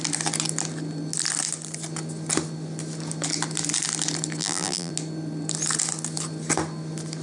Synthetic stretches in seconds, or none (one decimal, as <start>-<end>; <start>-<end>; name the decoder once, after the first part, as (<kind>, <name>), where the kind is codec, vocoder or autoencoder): 4.4-4.9 (vocoder, BigVGAN v2)